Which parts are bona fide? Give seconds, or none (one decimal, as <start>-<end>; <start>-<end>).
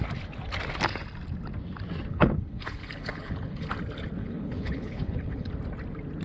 0.0-2.1; 3.7-4.2; 5.5-6.2